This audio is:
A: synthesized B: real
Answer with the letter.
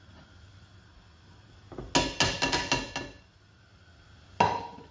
B